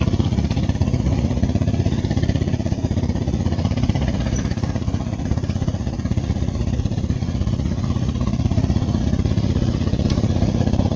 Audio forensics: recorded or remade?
remade